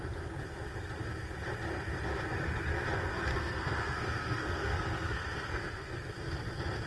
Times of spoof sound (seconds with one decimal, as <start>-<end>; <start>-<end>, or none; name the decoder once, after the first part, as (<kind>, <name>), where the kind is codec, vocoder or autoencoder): 3.3-6.1 (codec, SNAC)